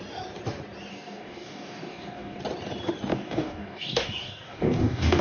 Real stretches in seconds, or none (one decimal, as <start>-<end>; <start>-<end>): 0.0-0.9; 2.4-3.1